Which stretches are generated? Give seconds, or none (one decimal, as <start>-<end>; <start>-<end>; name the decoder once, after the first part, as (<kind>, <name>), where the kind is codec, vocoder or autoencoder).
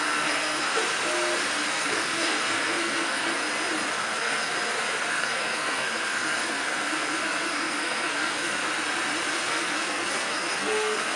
0.0-0.8 (codec, SNAC); 1.7-3.4; 3.9-4.5; 5.1-8.6; 9.3-11.2